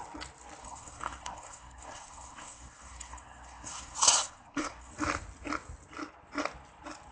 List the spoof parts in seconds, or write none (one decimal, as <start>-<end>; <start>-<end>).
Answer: 0.6-4.9